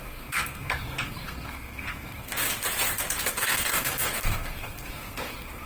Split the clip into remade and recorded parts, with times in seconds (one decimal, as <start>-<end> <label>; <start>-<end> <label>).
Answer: 0.0-2.4 remade; 2.4-3.3 recorded; 3.3-5.7 remade